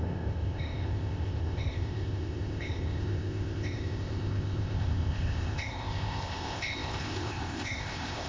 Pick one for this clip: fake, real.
fake